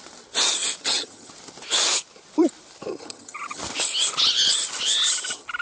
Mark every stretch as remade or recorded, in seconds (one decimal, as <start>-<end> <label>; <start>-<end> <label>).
0.0-0.8 recorded; 0.8-1.3 remade; 1.3-2.9 recorded; 2.9-3.6 remade; 3.6-5.6 recorded